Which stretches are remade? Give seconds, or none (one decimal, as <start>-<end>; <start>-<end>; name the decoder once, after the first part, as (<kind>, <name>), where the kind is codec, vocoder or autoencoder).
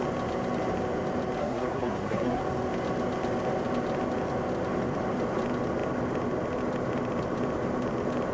1.4-2.4 (codec, SNAC)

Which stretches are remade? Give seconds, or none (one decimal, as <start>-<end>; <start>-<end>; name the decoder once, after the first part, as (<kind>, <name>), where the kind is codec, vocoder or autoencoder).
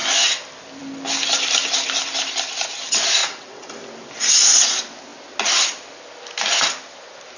3.2-3.7 (vocoder, WaveNeXt)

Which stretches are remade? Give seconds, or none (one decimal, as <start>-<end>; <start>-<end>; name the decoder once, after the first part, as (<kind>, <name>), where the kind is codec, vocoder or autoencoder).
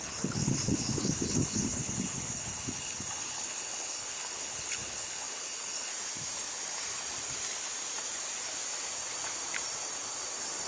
0.0-5.9 (codec, HILCodec)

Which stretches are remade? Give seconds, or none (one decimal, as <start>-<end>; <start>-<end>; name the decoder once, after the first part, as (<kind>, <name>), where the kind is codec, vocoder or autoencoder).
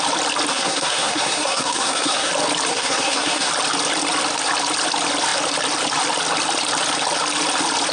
0.5-2.3 (codec, SNAC); 2.7-3.5